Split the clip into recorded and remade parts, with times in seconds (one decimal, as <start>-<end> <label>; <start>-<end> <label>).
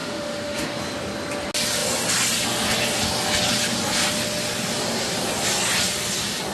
0.0-0.8 remade; 0.8-6.5 recorded